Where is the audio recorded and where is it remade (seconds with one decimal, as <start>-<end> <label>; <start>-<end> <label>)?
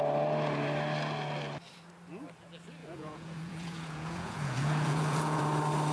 0.0-2.8 recorded; 2.8-5.4 remade; 5.4-5.9 recorded